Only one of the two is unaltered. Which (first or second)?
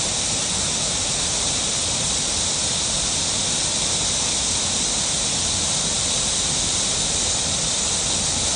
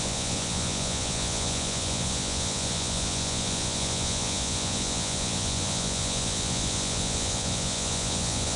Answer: first